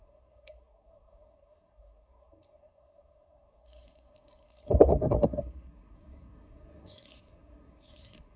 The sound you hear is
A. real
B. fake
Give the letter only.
B